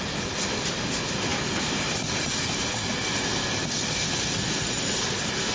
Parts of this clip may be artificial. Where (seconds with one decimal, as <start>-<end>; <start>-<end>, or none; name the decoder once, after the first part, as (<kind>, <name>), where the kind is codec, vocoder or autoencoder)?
none